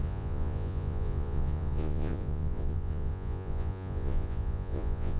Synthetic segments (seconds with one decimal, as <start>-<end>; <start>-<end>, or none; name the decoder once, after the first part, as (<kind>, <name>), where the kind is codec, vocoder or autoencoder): 0.0-5.2 (vocoder, Vocos)